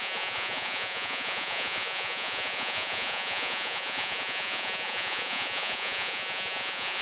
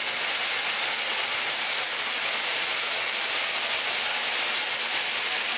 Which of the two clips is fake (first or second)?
first